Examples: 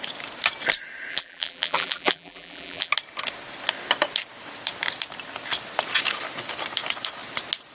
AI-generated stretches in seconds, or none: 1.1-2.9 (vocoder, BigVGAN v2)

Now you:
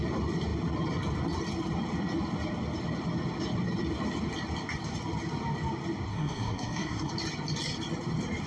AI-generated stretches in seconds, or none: 6.1-7.1 (codec, SNAC)

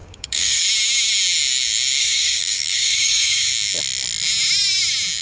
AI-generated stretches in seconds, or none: 0.0-0.6 (codec, DAC); 2.0-3.5

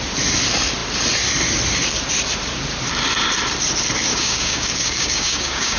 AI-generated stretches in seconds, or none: 4.1-5.8 (codec, DAC)

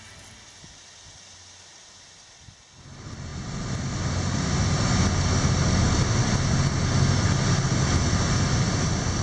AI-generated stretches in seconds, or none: none

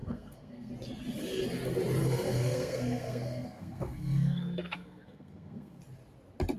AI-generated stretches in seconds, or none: 0.0-0.7 (codec, SNAC); 2.0-5.8

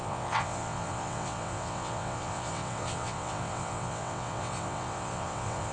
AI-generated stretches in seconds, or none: 0.0-5.7 (vocoder, WaveNeXt)

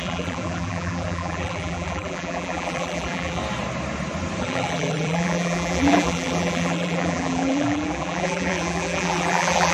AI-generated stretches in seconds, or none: 0.0-3.4 (vocoder, BigVGAN v2); 4.4-9.7